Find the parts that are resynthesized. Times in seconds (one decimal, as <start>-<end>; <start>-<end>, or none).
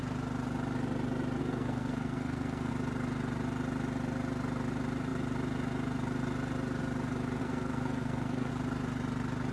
1.4-2.7; 7.4-8.5